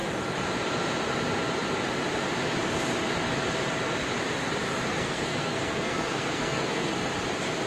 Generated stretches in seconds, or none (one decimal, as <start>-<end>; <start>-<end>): 4.9-6.9